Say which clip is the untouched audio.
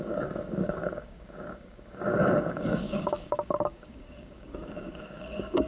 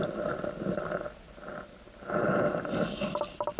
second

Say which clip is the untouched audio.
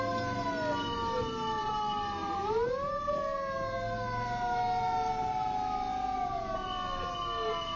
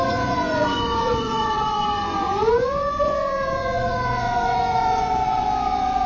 first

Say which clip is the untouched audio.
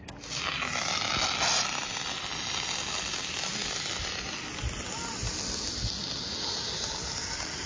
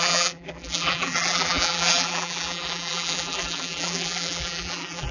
first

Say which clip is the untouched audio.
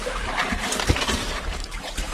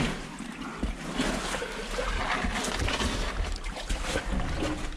second